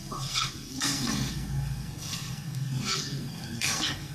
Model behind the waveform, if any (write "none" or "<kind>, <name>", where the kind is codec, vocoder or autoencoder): codec, SNAC